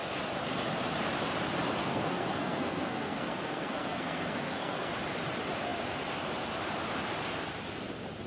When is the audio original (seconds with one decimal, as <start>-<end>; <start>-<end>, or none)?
0.0-1.8; 4.9-8.3